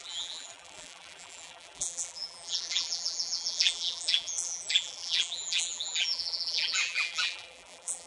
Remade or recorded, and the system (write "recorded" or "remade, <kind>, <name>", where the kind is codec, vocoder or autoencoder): remade, vocoder, BigVGAN v2